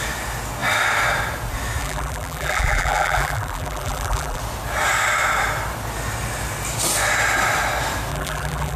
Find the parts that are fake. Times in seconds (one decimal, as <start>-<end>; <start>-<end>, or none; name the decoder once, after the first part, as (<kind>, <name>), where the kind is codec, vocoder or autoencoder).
1.8-4.4 (vocoder, BigVGAN v2); 8.1-8.8